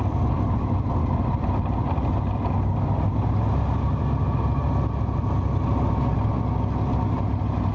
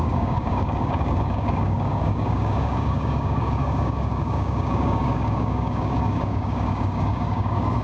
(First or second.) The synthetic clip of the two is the second